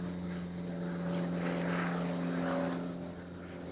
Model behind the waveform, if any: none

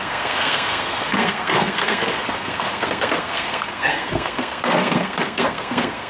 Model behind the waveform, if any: codec, SNAC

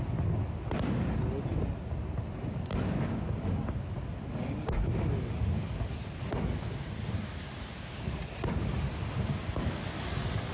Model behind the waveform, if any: none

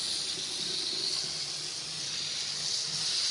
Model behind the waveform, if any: none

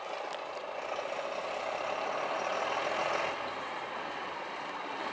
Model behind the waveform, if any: none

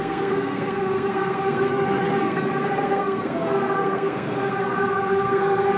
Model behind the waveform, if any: codec, SNAC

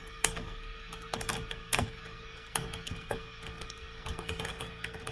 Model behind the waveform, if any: codec, SNAC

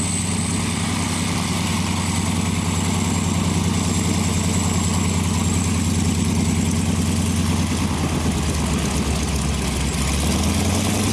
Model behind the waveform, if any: none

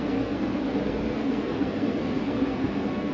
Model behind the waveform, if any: codec, SNAC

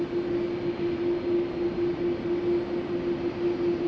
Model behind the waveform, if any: none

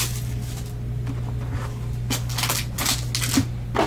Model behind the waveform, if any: none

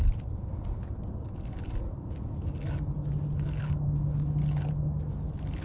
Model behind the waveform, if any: none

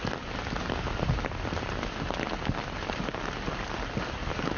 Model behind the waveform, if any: none